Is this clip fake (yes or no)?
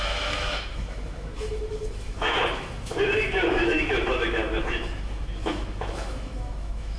yes